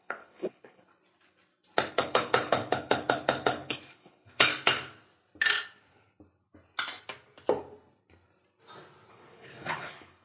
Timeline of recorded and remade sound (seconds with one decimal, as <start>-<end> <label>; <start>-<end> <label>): 0.0-0.9 remade; 0.9-1.9 recorded; 1.9-4.5 remade; 4.5-9.1 recorded; 9.1-10.2 remade